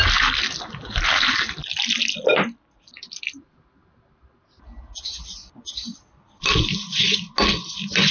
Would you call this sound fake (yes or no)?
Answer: no